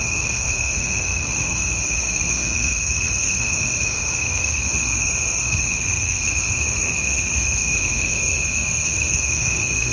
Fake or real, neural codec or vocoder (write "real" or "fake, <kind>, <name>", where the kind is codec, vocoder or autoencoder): fake, codec, SNAC